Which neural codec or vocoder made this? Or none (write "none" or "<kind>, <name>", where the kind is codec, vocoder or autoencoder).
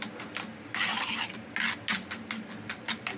none